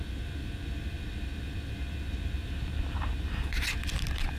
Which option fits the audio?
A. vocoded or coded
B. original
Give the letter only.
A